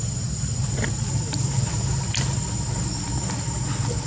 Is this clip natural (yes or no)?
yes